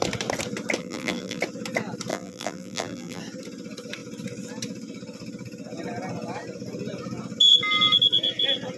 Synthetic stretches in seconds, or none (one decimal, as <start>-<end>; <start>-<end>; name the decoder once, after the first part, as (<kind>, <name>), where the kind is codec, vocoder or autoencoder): 0.8-1.4 (vocoder, BigVGAN v2); 2.1-3.2